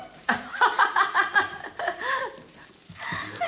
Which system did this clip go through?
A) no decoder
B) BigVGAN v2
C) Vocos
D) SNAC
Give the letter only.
B